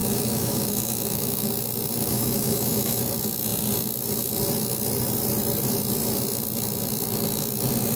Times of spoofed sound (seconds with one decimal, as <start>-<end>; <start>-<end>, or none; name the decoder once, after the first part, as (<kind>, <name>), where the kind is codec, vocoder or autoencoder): 0.0-1.5 (autoencoder, DAC-VAE); 2.0-3.0